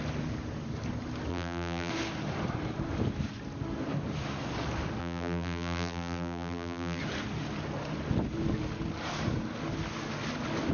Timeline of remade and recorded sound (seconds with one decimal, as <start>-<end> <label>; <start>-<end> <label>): 0.0-1.3 recorded; 1.3-1.9 remade; 1.9-5.0 recorded; 5.0-7.0 remade; 7.0-10.7 recorded